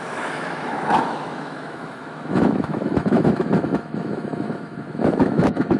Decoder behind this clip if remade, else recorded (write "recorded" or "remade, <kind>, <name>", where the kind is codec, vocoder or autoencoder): remade, autoencoder, DAC-VAE